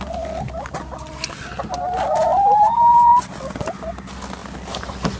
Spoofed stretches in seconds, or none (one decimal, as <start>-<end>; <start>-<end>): none